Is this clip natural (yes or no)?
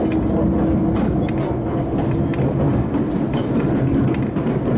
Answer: yes